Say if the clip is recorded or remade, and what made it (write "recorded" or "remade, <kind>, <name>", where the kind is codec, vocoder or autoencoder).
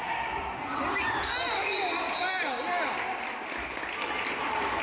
recorded